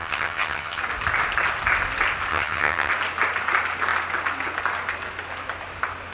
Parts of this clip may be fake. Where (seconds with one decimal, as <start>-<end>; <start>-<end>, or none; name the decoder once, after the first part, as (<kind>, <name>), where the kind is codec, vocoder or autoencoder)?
0.0-0.8 (vocoder, HiFi-GAN); 2.3-2.9